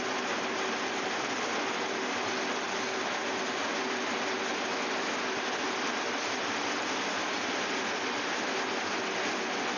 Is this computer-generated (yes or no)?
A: no